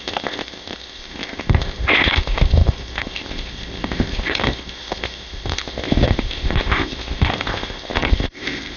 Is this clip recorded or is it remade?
remade